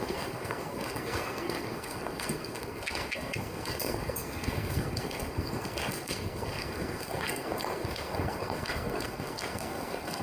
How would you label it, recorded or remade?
remade